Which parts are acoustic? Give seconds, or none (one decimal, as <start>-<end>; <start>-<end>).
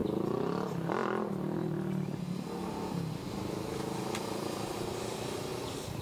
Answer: 0.0-3.1